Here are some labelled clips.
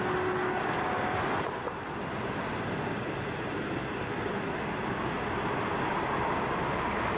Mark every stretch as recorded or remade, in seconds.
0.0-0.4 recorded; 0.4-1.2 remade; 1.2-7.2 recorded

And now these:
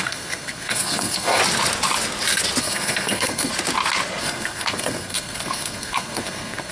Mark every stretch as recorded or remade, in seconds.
0.0-1.4 remade; 1.4-2.6 recorded; 2.6-3.5 remade; 3.5-4.2 recorded; 4.2-6.7 remade

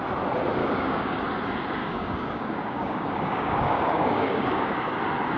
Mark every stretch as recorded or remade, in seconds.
0.0-0.6 recorded; 0.6-1.2 remade; 1.2-1.8 recorded; 1.8-5.0 remade; 5.0-5.4 recorded

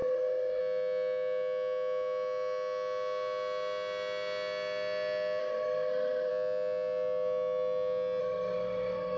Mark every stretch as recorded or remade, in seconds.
0.0-0.6 remade; 0.6-5.4 recorded; 5.4-6.3 remade; 6.3-8.2 recorded; 8.2-9.2 remade

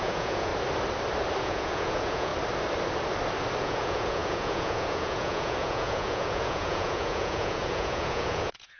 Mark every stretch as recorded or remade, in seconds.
0.0-0.5 remade; 0.5-1.4 recorded; 1.4-2.3 remade; 2.3-3.6 recorded; 3.6-8.8 remade

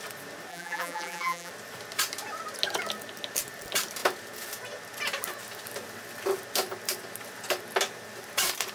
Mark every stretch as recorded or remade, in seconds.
0.0-0.5 recorded; 0.5-1.5 remade; 1.5-8.7 recorded